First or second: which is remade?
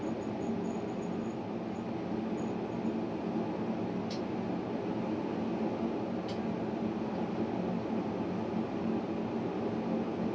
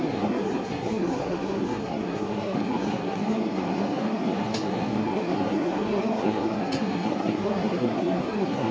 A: second